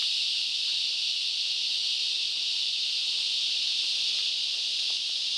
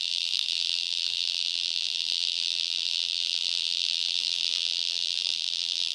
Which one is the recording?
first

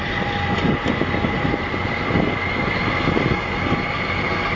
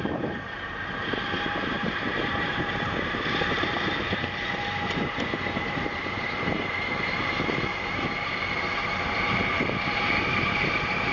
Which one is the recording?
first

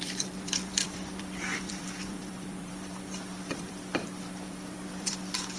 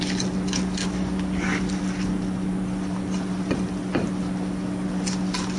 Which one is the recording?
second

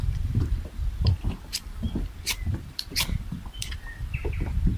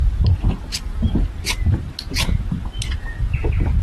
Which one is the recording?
second